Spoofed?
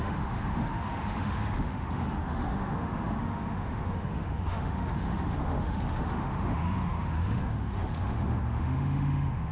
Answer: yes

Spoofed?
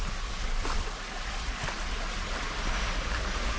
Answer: no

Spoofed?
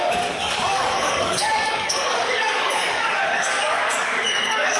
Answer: yes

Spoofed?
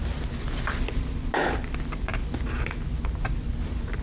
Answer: no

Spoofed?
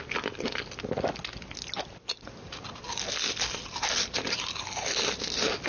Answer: no